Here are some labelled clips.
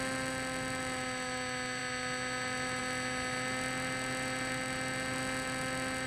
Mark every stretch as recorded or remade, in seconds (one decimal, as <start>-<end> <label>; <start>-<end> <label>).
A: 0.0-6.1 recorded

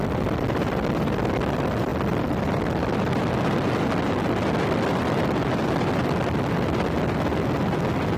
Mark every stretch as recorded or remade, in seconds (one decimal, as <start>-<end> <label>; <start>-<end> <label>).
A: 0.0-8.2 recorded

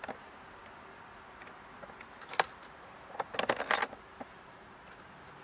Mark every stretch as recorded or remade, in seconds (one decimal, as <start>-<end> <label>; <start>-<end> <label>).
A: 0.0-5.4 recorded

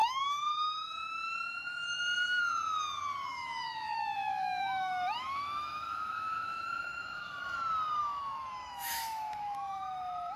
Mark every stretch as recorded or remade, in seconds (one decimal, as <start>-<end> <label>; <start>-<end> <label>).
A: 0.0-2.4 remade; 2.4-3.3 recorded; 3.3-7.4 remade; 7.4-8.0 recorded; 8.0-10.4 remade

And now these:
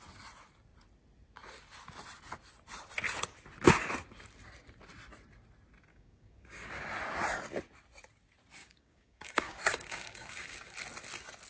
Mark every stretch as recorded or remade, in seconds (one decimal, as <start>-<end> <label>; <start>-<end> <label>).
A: 0.0-5.9 recorded; 5.9-6.7 remade; 6.7-8.6 recorded; 8.6-10.7 remade; 10.7-11.5 recorded

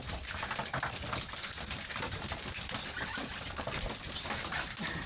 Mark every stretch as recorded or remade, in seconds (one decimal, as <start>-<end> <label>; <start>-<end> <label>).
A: 0.0-5.1 recorded

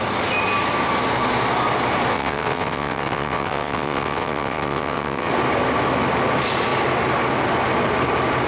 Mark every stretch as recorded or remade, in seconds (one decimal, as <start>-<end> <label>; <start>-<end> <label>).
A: 0.0-2.1 recorded; 2.1-5.3 remade; 5.3-8.5 recorded

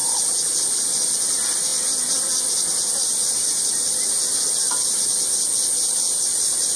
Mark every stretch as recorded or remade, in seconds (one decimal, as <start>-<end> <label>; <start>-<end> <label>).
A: 0.0-6.8 recorded